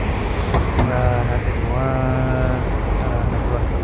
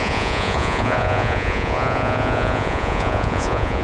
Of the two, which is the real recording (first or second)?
first